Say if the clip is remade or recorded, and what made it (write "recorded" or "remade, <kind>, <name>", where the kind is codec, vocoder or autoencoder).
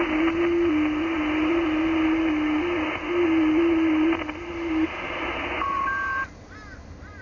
recorded